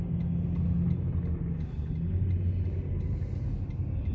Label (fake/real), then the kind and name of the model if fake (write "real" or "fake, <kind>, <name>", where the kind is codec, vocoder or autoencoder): real